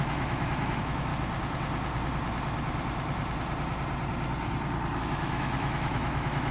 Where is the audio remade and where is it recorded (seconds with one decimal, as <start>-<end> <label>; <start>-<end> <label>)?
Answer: 0.0-1.1 remade; 1.1-5.0 recorded; 5.0-6.5 remade